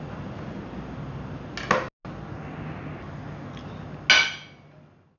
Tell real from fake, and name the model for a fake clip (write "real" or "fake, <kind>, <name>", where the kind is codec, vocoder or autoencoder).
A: real